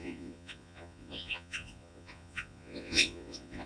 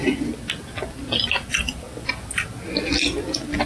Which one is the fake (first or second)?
first